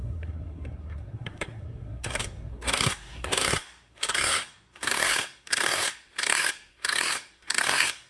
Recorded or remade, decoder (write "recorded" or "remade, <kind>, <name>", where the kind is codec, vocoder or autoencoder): remade, codec, SNAC